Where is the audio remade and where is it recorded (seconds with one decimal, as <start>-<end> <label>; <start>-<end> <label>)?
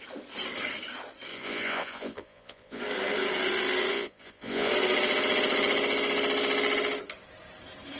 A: 0.0-1.3 recorded; 1.3-2.8 remade; 2.8-3.9 recorded; 3.9-4.7 remade; 4.7-8.0 recorded